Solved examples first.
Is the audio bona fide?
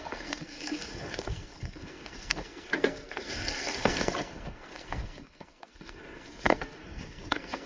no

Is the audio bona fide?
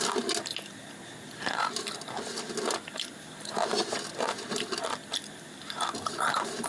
yes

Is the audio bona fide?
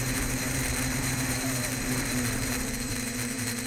no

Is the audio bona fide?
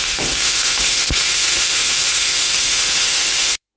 no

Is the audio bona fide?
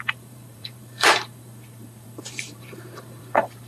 no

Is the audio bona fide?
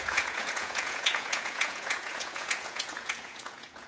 no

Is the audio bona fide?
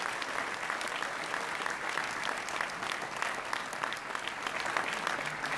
yes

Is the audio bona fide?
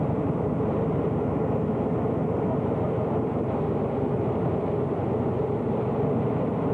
yes